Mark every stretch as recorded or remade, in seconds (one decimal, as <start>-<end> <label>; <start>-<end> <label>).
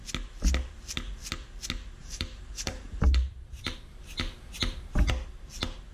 0.0-2.0 recorded; 2.0-4.4 remade; 4.4-5.9 recorded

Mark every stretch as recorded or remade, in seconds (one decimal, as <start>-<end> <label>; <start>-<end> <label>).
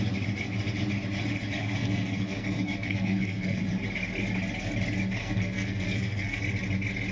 0.0-1.6 recorded; 1.6-3.6 remade; 3.6-5.2 recorded; 5.2-6.4 remade; 6.4-7.1 recorded